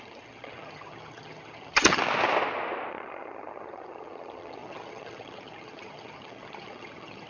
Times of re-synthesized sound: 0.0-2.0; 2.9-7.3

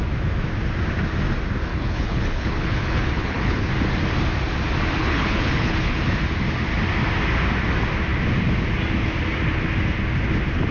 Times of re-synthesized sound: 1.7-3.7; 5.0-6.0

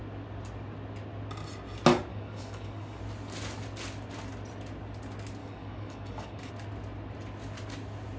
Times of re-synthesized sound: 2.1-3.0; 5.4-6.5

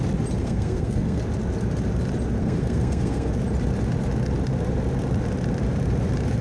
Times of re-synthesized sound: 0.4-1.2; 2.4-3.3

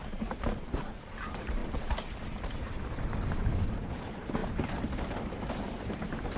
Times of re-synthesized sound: 0.0-6.4

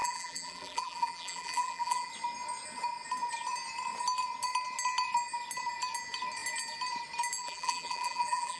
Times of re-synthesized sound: 0.0-2.1; 7.4-8.6

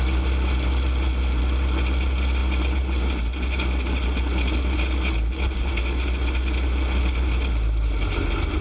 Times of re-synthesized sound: none

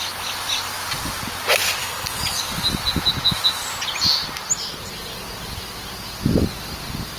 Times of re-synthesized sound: 1.8-2.4